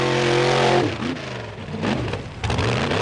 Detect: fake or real real